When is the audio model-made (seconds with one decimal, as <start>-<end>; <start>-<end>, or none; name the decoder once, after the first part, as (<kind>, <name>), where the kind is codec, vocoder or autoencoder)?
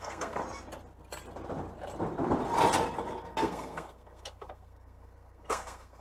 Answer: 0.0-0.4 (codec, SNAC); 3.2-6.0